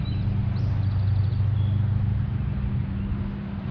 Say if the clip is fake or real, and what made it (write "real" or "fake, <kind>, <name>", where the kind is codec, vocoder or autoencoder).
real